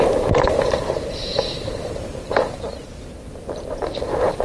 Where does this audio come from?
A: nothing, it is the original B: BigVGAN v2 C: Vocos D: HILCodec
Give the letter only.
B